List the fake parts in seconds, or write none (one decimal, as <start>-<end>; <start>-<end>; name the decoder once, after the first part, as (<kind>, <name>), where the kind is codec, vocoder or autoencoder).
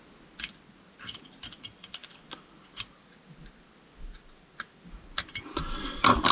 none